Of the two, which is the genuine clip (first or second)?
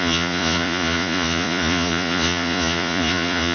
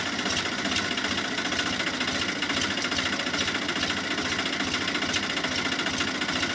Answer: second